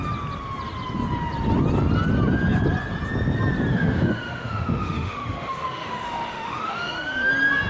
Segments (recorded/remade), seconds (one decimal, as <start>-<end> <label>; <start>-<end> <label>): 0.0-3.7 recorded; 3.7-7.3 remade; 7.3-7.7 recorded